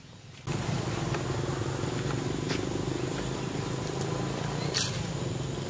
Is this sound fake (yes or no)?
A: no